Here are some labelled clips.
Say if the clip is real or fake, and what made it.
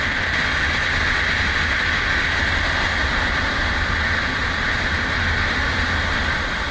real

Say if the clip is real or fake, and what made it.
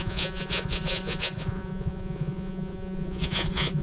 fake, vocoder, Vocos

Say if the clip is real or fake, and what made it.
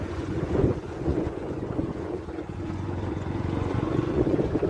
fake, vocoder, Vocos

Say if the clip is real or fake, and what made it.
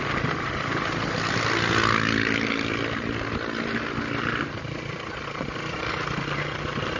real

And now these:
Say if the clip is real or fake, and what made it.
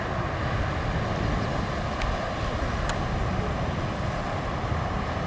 real